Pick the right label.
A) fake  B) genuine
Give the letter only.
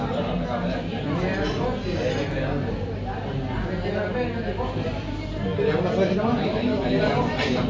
B